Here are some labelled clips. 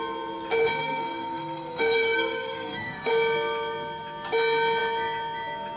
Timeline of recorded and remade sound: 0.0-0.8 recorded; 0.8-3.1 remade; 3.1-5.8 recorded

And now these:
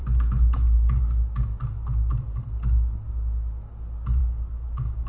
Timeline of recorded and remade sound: 0.0-4.2 recorded; 4.2-5.1 remade

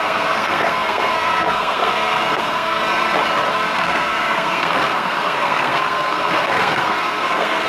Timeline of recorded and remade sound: 0.0-2.8 remade; 2.8-3.5 recorded; 3.5-7.7 remade

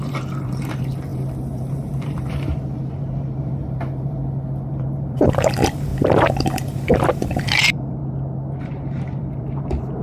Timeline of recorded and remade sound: 0.0-4.2 remade; 4.2-4.7 recorded; 4.7-8.0 remade; 8.0-8.6 recorded; 8.6-10.0 remade

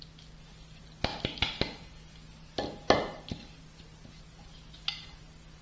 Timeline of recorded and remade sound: 0.0-5.6 recorded

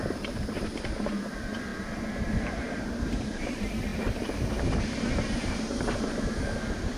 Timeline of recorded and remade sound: 0.0-3.9 remade; 3.9-5.4 recorded; 5.4-7.0 remade

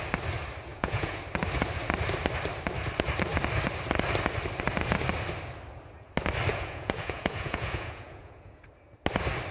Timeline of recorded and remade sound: 0.0-0.7 recorded; 0.7-1.2 remade; 1.2-6.5 recorded; 6.5-8.6 remade; 8.6-9.5 recorded

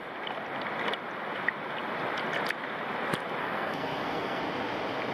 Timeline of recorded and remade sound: 0.0-3.4 recorded; 3.4-4.4 remade; 4.4-5.1 recorded